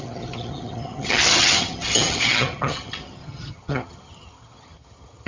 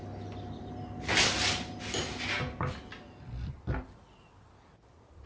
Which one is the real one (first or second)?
second